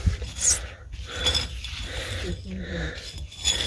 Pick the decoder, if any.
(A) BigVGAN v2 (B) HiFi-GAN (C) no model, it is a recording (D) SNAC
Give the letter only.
C